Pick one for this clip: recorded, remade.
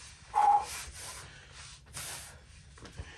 recorded